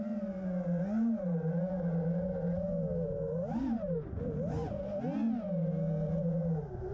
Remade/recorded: recorded